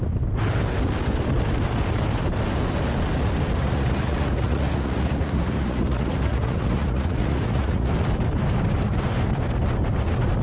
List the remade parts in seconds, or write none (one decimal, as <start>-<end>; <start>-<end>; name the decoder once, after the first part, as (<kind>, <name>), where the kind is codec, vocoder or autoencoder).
3.6-7.9 (vocoder, Vocos)